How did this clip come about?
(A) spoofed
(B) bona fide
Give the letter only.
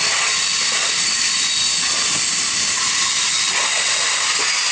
B